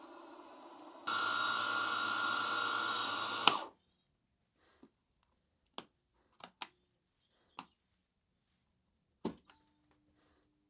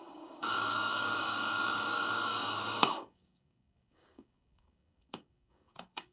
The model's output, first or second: second